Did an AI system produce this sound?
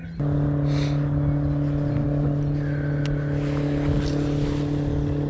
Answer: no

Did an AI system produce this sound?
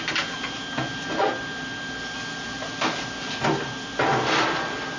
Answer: no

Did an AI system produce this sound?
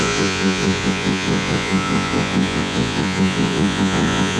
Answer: yes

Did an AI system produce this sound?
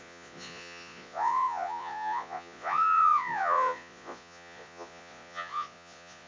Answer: yes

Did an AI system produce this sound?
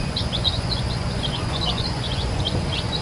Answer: yes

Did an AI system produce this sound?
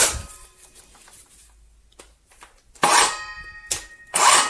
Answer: no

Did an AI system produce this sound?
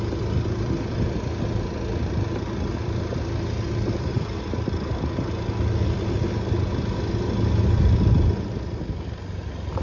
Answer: no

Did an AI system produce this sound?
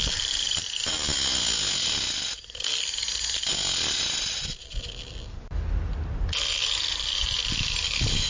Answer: no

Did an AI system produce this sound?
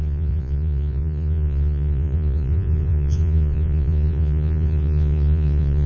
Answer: yes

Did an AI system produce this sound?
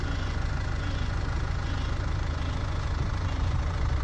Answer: yes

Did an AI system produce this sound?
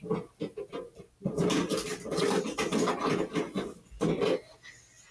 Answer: no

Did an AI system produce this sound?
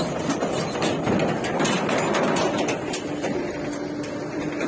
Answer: no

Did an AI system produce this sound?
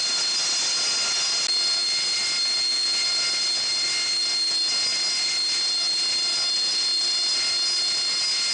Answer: no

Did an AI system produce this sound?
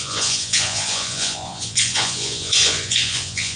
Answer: yes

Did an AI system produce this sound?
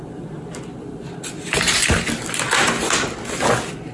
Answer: no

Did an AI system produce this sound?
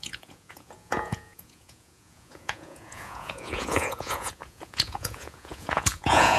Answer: yes